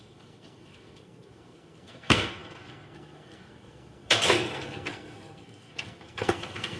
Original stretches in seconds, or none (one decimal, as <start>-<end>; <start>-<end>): none